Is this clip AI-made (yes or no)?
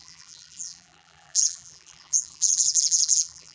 yes